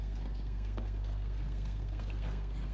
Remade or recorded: remade